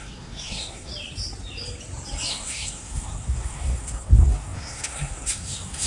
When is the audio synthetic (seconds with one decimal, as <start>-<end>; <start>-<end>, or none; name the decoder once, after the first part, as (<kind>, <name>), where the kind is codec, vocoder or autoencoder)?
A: 0.0-0.9 (codec, SNAC); 2.3-5.9